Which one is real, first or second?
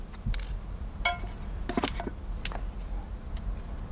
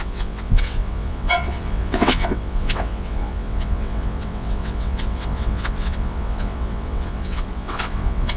first